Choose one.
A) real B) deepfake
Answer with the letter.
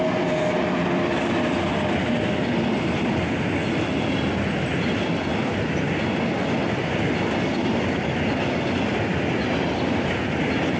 A